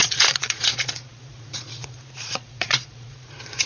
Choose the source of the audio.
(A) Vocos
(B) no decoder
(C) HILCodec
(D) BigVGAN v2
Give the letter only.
A